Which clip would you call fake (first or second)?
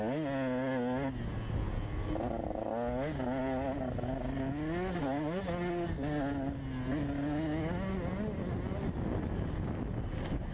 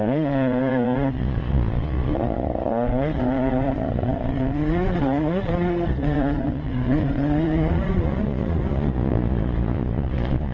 second